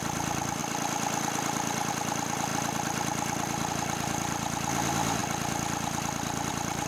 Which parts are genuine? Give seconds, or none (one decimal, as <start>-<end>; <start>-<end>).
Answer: 0.6-1.9; 2.5-3.7; 5.2-6.5